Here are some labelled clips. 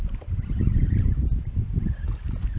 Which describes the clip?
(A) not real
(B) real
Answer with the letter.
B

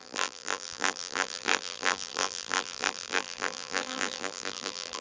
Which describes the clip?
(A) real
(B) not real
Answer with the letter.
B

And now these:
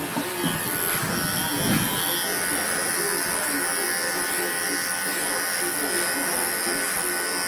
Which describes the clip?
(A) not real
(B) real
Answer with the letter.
B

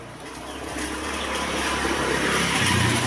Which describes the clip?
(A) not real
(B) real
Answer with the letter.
A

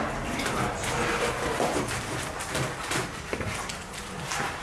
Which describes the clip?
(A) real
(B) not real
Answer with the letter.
A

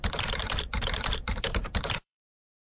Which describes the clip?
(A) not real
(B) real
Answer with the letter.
A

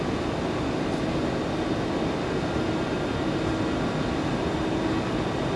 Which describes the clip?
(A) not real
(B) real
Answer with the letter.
B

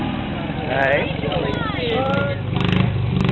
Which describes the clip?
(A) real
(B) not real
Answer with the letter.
B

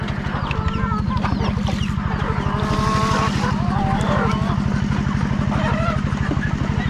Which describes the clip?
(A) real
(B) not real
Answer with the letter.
A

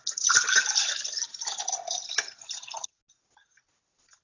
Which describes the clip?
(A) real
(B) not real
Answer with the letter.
A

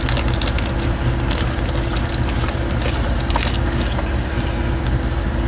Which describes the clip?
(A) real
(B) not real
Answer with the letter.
A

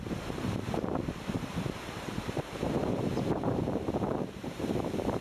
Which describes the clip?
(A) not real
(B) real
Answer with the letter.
A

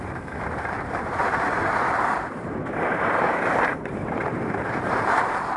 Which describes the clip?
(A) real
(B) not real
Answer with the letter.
B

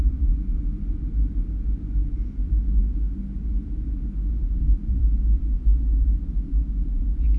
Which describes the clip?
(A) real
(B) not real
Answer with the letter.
B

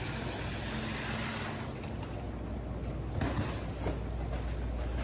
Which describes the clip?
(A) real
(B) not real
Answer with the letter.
A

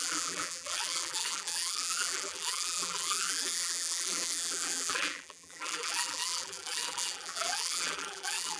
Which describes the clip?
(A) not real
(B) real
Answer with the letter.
A